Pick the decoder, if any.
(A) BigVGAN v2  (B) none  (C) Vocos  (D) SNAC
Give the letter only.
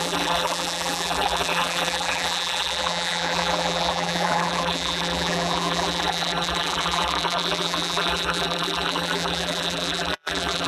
A